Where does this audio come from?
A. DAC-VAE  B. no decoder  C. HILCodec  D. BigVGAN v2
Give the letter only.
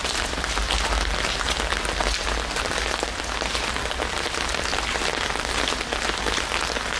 B